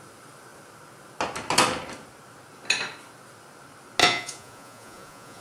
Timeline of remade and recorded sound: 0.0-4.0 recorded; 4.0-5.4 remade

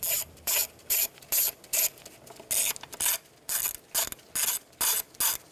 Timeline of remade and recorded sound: 0.0-5.5 recorded

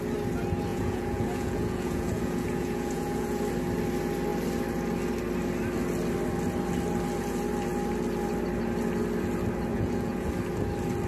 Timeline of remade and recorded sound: 0.0-0.7 recorded; 0.7-3.4 remade; 3.4-9.7 recorded; 9.7-10.3 remade; 10.3-11.1 recorded

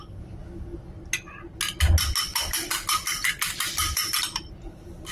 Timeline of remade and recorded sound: 0.0-5.1 recorded

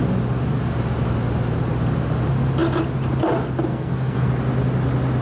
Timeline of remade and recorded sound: 0.0-3.7 recorded; 3.7-4.3 remade; 4.3-5.2 recorded

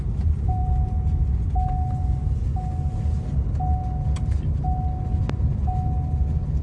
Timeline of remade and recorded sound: 0.0-6.6 recorded

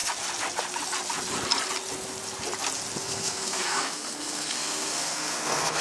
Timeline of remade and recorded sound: 0.0-3.0 recorded; 3.0-5.8 remade

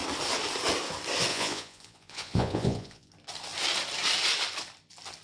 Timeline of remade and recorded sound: 0.0-1.3 recorded; 1.3-3.1 remade; 3.1-5.2 recorded